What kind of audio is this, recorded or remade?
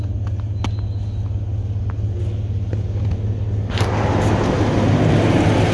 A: recorded